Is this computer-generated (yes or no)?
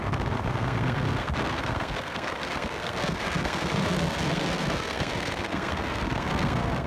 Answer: yes